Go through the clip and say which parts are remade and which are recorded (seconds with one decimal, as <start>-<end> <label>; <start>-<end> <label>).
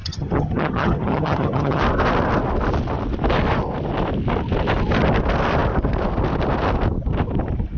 0.0-1.8 remade; 1.8-7.8 recorded